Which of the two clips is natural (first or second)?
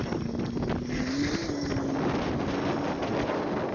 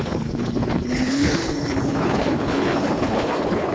first